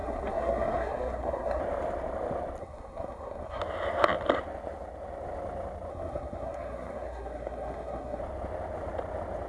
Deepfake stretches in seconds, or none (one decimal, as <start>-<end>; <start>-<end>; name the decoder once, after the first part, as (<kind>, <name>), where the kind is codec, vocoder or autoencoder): 0.0-1.6 (codec, SNAC); 2.6-3.6; 5.9-8.2

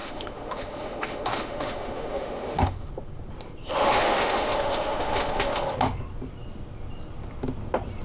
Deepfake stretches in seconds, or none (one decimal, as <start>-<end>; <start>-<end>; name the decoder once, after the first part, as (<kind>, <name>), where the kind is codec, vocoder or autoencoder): 0.0-2.9 (autoencoder, DAC-VAE); 3.7-5.6

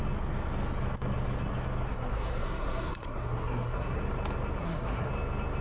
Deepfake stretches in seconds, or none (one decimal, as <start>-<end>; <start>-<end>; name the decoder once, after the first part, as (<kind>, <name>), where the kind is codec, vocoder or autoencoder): 1.9-4.0 (codec, SNAC); 4.6-5.1

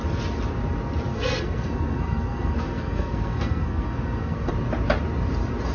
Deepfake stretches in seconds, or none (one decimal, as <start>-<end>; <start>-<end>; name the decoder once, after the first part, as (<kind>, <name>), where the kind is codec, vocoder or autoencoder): 1.1-4.5 (codec, SNAC)

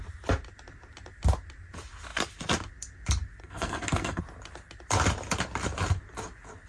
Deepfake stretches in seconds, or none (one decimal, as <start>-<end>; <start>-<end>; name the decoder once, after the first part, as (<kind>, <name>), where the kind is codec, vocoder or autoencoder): 3.4-4.2 (codec, SNAC)

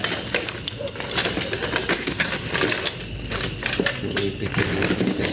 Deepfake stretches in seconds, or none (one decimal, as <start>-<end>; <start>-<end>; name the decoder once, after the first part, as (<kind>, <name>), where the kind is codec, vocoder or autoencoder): 1.9-2.5 (codec, SNAC)

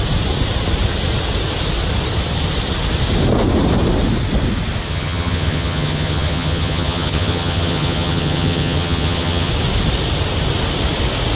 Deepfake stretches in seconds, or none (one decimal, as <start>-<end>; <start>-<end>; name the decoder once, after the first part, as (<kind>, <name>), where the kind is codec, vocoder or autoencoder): 4.9-9.5 (vocoder, HiFi-GAN)